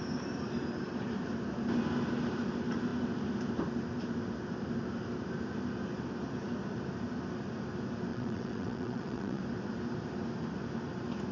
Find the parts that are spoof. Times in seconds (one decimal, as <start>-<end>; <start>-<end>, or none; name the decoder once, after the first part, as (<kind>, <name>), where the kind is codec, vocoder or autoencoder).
8.1-9.4 (vocoder, WaveNeXt)